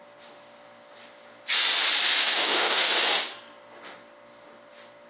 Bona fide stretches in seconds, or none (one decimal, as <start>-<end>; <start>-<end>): 0.0-2.2; 2.9-5.1